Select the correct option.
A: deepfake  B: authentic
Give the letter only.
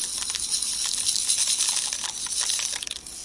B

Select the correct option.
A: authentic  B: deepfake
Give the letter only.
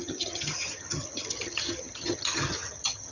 B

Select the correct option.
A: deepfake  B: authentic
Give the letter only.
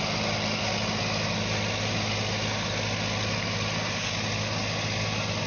B